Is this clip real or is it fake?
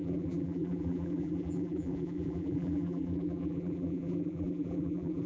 fake